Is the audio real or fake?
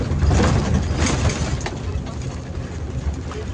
real